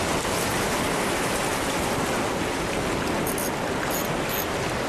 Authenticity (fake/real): real